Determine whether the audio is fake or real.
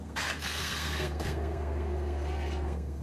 fake